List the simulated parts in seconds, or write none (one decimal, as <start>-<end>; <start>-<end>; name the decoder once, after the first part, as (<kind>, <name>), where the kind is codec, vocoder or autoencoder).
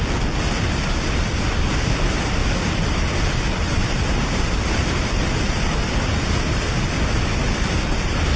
none